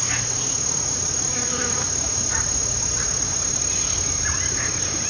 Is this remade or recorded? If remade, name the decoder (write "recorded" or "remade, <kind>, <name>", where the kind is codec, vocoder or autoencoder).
recorded